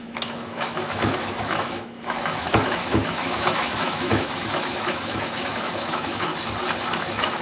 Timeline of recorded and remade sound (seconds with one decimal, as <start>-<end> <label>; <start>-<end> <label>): 0.0-6.3 remade; 6.3-7.0 recorded; 7.0-7.4 remade